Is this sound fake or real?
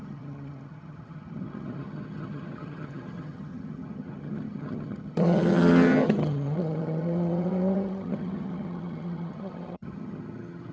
fake